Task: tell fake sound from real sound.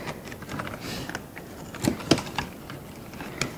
real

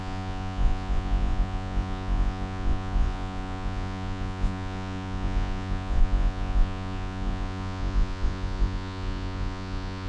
fake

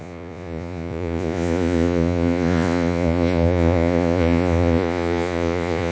fake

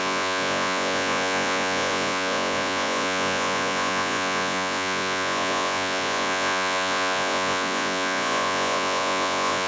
fake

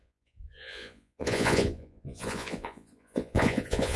fake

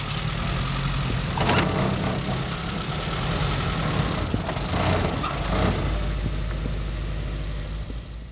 real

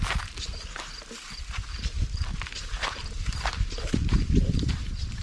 real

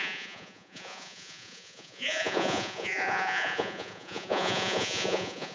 fake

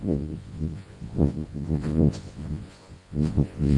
fake